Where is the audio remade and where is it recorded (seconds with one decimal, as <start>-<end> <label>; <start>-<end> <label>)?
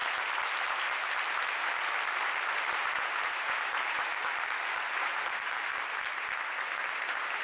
0.0-3.5 recorded; 3.5-4.1 remade; 4.1-4.8 recorded; 4.8-5.7 remade; 5.7-6.9 recorded; 6.9-7.4 remade